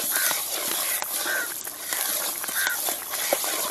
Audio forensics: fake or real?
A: fake